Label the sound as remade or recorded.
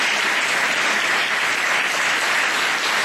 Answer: recorded